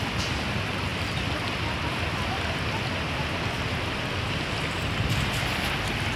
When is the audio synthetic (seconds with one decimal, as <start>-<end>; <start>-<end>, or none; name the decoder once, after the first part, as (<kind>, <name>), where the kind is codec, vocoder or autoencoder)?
none